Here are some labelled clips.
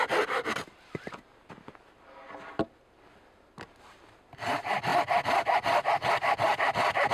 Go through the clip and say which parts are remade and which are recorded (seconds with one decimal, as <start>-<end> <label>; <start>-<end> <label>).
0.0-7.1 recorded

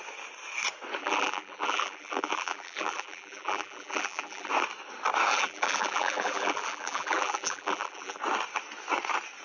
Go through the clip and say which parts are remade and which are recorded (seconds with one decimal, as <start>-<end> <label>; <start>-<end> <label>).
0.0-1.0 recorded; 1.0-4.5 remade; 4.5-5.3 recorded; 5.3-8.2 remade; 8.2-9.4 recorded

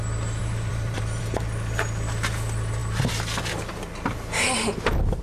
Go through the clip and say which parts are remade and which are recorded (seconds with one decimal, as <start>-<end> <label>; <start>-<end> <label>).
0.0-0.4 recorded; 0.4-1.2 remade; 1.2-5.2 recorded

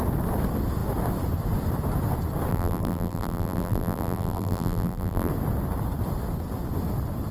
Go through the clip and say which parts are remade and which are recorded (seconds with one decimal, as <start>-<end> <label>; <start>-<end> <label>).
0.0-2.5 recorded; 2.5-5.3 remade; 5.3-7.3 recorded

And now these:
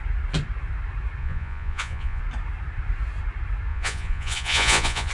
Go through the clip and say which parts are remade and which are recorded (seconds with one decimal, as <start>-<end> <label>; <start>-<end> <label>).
0.0-1.2 recorded; 1.2-2.2 remade; 2.2-3.7 recorded; 3.7-5.1 remade